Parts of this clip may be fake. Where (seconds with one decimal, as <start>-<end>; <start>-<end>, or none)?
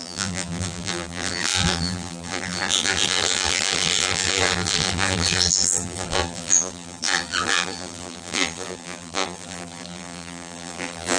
0.0-11.2